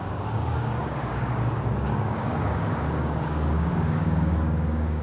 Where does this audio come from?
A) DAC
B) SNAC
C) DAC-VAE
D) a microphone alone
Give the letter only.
A